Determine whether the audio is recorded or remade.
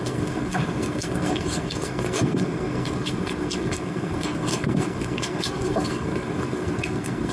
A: remade